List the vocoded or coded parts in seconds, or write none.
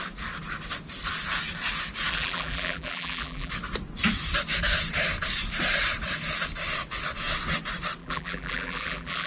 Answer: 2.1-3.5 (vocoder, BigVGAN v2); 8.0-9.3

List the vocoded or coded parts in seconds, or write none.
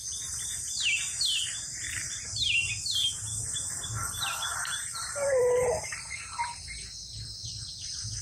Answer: 5.0-6.2 (vocoder, BigVGAN v2); 7.4-8.2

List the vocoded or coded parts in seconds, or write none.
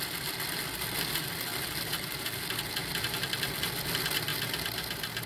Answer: 1.5-2.4 (vocoder, BigVGAN v2); 4.3-5.3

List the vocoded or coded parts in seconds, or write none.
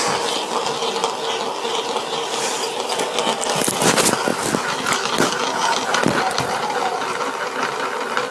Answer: 1.7-2.5 (vocoder, BigVGAN v2)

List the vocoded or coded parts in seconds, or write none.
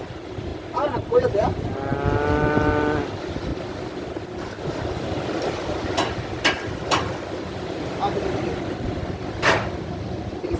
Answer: 0.0-0.5 (vocoder, BigVGAN v2); 1.3-1.9; 3.0-3.5; 4.4-10.6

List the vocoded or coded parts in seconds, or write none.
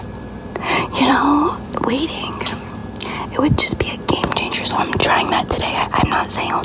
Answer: 0.0-2.8 (vocoder, BigVGAN v2); 4.2-6.6